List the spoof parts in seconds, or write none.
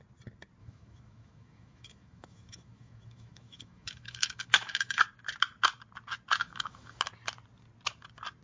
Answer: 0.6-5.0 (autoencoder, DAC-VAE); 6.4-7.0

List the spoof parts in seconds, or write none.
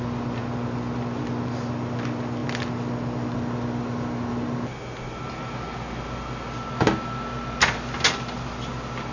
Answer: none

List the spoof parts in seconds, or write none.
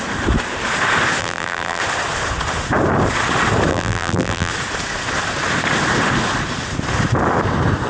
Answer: 1.2-1.8 (vocoder, BigVGAN v2); 3.7-4.5